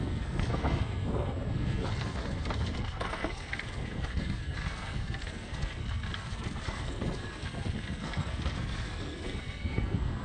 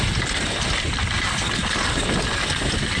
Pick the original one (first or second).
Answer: second